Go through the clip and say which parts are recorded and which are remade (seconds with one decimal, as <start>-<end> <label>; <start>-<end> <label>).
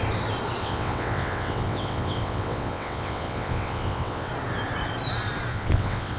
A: 0.0-0.6 recorded; 0.6-4.3 remade; 4.3-5.5 recorded; 5.5-6.2 remade